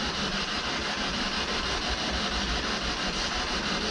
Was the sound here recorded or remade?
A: recorded